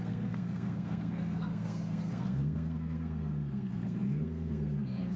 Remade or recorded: remade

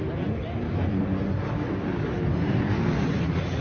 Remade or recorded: remade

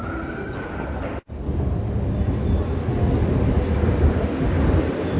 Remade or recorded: recorded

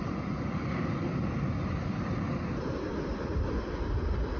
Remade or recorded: remade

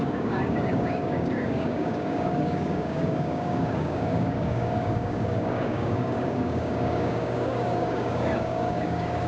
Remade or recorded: remade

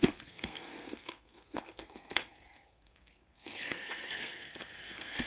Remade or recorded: remade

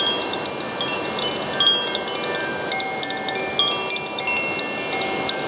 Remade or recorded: recorded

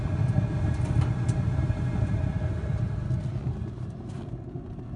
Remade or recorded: recorded